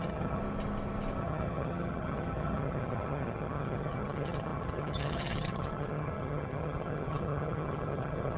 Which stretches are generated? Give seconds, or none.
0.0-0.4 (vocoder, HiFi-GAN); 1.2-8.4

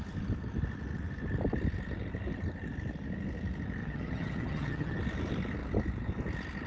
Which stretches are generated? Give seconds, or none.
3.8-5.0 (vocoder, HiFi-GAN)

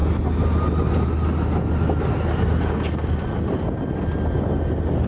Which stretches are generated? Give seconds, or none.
none

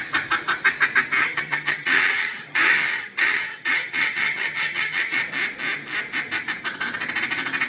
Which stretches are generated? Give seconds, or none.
1.2-5.2 (vocoder, HiFi-GAN)

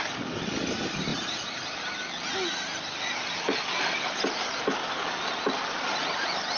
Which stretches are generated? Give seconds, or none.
none

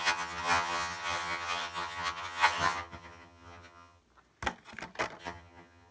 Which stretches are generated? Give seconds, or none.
0.0-4.0 (vocoder, HiFi-GAN); 5.2-5.9

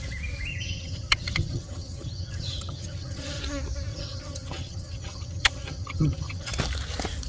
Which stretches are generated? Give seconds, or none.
0.5-3.4 (vocoder, HiFi-GAN); 3.9-6.5